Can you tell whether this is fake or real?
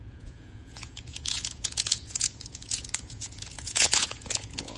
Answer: fake